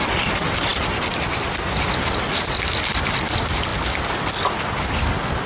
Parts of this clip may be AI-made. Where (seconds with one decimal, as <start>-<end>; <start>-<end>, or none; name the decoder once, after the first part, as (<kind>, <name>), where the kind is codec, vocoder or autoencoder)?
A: none